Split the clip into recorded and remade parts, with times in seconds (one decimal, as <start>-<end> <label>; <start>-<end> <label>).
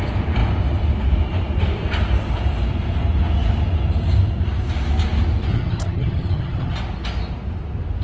0.0-5.5 recorded; 5.5-6.8 remade; 6.8-8.0 recorded